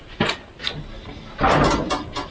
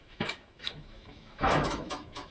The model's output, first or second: second